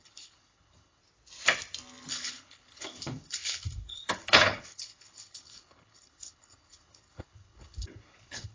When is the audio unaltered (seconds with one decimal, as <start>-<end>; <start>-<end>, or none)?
1.0-2.1